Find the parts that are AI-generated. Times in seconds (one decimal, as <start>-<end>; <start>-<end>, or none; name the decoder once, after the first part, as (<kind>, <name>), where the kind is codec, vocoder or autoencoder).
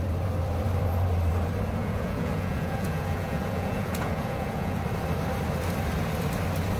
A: 1.8-4.8 (vocoder, Vocos)